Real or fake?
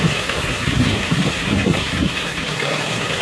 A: fake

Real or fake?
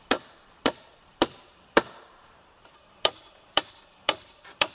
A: fake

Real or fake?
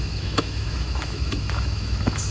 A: fake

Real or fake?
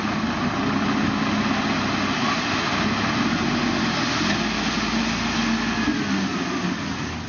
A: real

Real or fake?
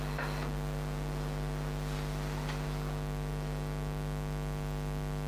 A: real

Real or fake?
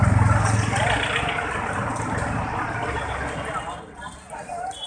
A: real